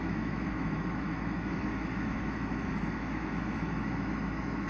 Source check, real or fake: fake